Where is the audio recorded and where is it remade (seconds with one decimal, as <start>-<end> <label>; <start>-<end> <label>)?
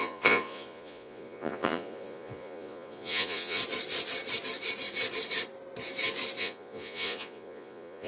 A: 0.0-3.6 remade; 3.6-6.4 recorded; 6.4-8.1 remade